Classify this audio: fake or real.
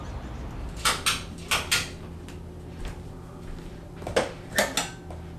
real